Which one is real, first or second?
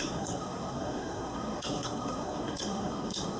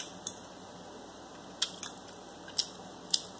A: second